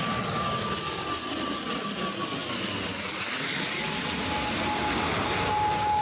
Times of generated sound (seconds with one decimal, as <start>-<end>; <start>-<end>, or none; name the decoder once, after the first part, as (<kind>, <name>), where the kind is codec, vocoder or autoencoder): none